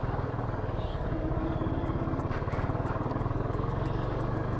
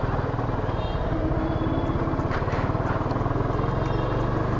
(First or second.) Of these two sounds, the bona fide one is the second